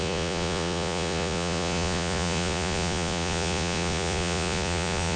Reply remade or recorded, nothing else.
remade